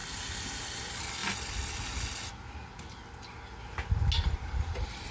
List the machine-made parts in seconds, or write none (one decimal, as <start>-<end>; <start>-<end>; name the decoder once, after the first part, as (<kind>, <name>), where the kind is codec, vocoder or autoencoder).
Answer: none